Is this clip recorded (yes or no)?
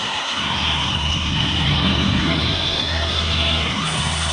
no